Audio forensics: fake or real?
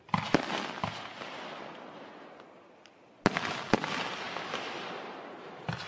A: real